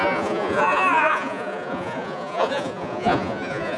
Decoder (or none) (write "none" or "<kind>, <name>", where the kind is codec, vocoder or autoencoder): vocoder, Vocos